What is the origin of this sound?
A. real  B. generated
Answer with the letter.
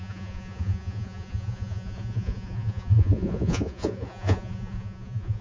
B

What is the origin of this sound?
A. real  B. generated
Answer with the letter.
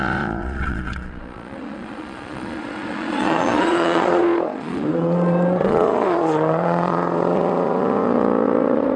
B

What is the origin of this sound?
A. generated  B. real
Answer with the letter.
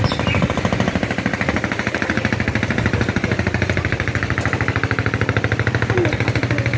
B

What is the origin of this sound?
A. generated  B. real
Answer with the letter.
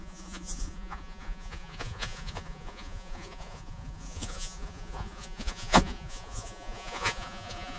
A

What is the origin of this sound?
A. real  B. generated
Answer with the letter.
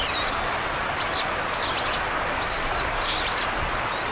A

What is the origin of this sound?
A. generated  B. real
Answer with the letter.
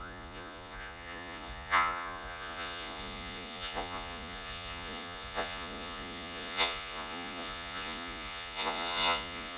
A